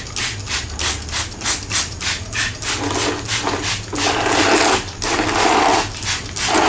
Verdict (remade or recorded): recorded